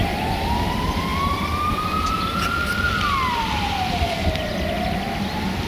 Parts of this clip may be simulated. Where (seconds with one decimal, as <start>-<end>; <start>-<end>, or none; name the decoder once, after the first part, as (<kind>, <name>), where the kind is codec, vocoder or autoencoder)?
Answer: none